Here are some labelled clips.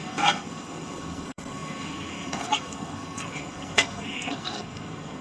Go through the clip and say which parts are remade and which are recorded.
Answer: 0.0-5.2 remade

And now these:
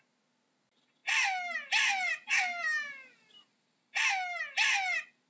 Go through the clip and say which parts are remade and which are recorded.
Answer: 0.0-5.3 recorded

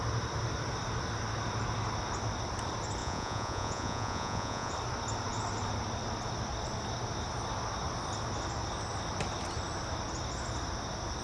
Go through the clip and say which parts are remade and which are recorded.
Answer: 0.0-3.0 recorded; 3.0-4.7 remade; 4.7-11.2 recorded

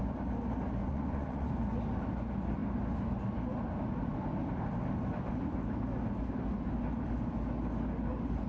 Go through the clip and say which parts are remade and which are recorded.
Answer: 0.0-0.8 recorded; 0.8-1.5 remade; 1.5-8.5 recorded